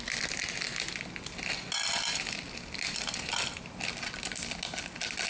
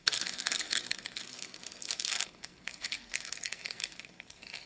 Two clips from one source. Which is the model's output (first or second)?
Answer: second